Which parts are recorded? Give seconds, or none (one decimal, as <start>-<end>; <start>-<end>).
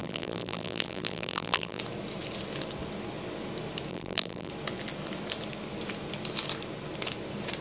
1.8-3.9; 4.5-7.6